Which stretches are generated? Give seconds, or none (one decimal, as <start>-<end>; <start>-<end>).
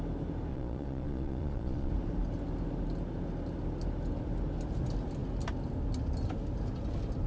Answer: 0.5-1.9